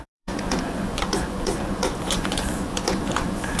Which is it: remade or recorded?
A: remade